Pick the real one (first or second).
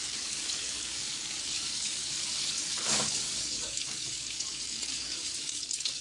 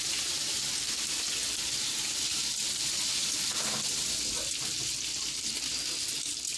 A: second